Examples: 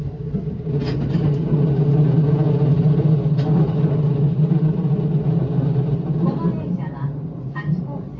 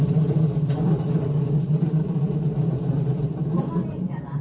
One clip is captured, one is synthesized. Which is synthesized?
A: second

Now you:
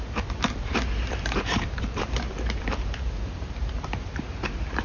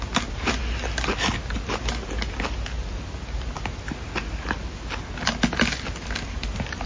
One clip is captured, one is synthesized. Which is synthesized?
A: first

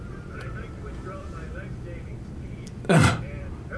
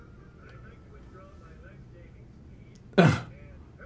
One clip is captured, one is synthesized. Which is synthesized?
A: first